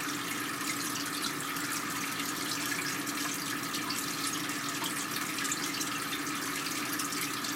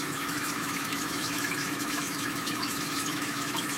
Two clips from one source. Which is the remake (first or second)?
second